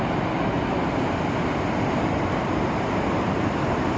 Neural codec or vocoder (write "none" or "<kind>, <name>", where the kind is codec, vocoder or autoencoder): none